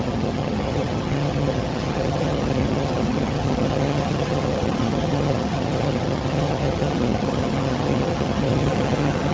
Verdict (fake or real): fake